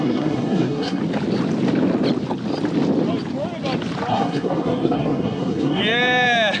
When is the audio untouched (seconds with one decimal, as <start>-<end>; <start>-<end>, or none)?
1.0-4.1; 5.8-6.6